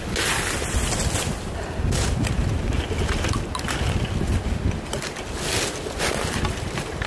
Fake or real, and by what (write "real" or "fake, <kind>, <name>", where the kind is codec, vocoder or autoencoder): real